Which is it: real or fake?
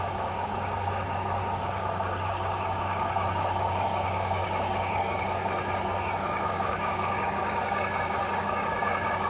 fake